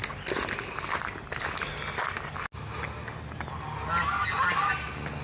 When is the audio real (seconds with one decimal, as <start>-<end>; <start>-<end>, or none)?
0.0-5.2